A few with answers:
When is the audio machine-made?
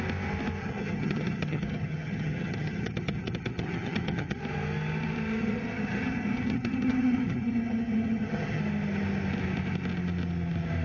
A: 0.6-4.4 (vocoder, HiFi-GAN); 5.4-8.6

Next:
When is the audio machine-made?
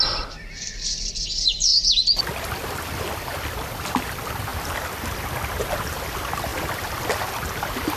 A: 0.0-1.7 (vocoder, BigVGAN v2); 2.4-4.5; 5.9-8.0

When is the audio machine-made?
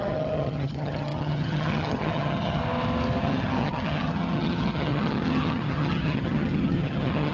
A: 0.0-2.6 (vocoder, HiFi-GAN); 3.2-7.3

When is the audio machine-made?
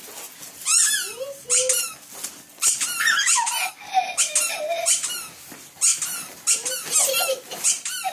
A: none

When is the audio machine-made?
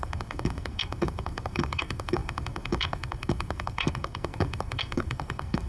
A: 0.0-5.7 (codec, SNAC)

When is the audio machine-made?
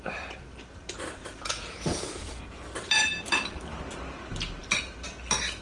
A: 1.2-2.4 (vocoder, Vocos)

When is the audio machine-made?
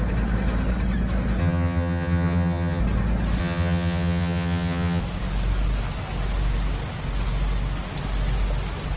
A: 1.4-2.8 (vocoder, HiFi-GAN); 3.4-5.0